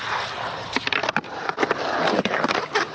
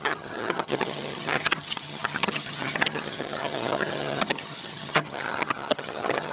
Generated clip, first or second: second